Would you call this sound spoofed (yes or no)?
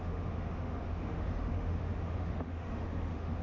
yes